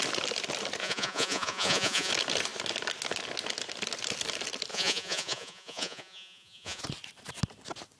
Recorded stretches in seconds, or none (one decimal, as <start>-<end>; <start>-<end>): 0.0-0.8; 2.1-4.7; 6.8-8.0